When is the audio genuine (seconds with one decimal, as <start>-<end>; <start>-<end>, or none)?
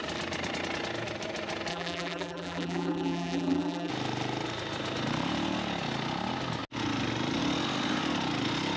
0.0-1.7; 3.9-8.8